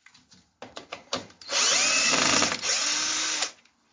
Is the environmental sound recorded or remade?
recorded